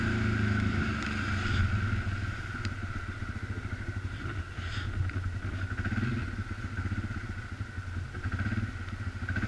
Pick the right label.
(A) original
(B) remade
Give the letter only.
A